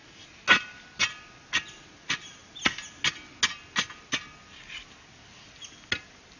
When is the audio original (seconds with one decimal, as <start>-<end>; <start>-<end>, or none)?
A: 0.0-6.4